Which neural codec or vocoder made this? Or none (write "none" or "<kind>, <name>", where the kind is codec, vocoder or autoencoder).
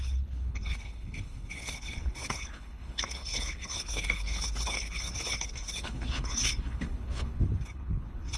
codec, HILCodec